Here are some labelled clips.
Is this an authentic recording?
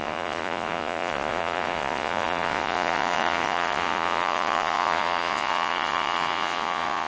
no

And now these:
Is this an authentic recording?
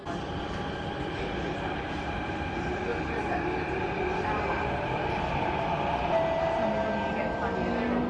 yes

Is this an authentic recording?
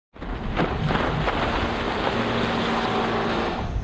yes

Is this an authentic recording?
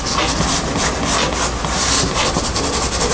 yes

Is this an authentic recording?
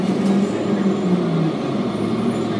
yes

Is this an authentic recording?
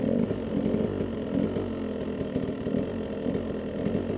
yes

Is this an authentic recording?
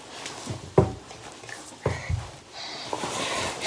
yes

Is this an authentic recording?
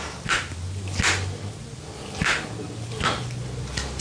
yes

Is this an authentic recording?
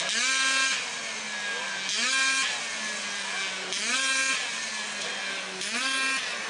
yes